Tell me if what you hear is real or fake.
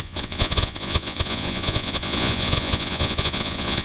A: fake